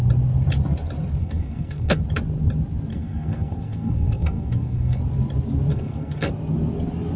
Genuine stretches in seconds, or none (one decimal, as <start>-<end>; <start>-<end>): 0.0-1.2; 2.0-2.9; 5.0-5.7; 6.3-7.2